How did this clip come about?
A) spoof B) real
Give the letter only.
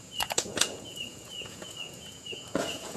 A